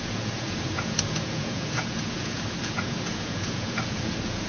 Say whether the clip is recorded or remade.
remade